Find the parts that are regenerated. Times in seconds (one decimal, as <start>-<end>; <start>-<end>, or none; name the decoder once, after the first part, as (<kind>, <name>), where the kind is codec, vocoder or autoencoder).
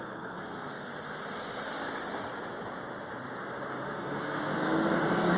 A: 0.0-0.9 (codec, SNAC); 3.8-5.4